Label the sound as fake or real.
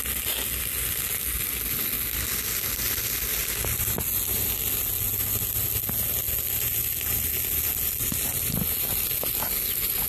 real